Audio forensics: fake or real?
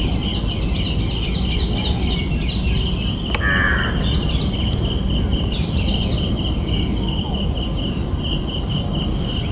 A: real